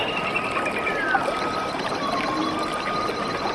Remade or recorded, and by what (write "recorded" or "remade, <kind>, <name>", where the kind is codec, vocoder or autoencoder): recorded